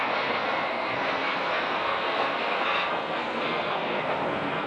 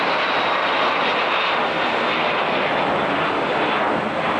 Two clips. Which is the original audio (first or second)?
second